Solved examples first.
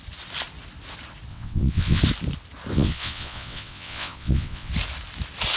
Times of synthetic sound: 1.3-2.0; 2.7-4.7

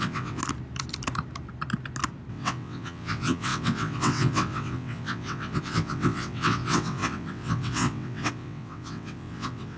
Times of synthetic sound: 0.0-0.4; 2.3-9.8

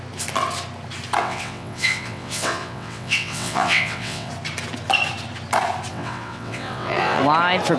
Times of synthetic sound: 1.2-4.3; 5.9-7.2

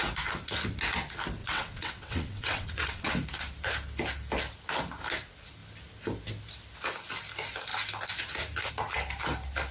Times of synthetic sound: 1.4-3.1

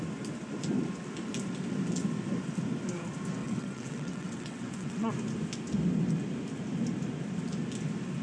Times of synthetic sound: 3.4-5.1

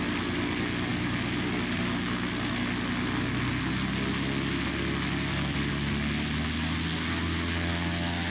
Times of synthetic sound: none